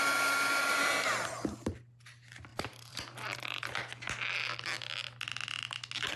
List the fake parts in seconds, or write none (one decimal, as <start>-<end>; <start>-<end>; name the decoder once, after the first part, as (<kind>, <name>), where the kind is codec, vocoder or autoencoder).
2.5-3.7 (vocoder, BigVGAN v2)